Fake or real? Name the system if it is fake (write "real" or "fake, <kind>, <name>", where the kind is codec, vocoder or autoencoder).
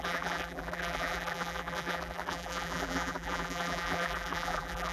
fake, vocoder, BigVGAN v2